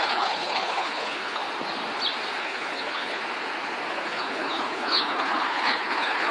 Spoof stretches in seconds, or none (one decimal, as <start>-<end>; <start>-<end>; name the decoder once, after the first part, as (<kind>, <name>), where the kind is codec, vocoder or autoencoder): 0.0-1.4 (codec, HILCodec); 2.4-3.2; 3.9-6.3